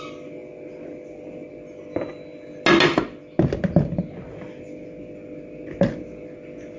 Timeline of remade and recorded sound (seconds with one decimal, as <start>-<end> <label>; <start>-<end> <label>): 0.0-6.8 recorded